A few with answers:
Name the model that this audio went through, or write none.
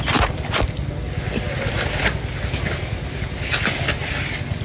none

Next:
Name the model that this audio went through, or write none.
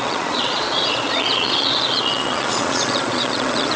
vocoder, Vocos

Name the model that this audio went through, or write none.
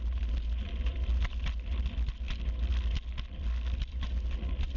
none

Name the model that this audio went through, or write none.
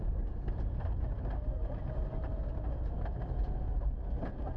none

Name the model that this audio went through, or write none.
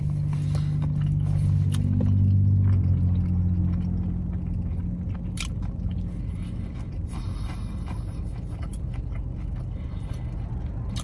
none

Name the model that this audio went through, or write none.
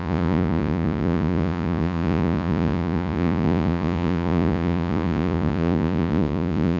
vocoder, Vocos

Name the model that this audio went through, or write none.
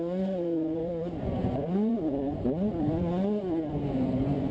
vocoder, Vocos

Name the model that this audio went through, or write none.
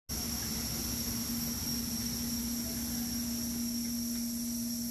none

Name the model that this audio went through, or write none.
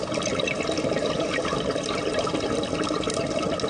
none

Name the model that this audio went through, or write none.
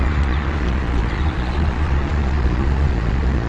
vocoder, Vocos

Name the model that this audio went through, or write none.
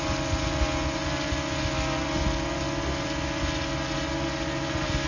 none